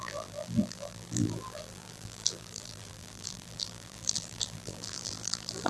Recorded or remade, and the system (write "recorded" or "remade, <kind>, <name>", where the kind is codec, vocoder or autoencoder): remade, vocoder, BigVGAN v2